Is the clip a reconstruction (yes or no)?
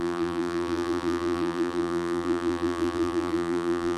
yes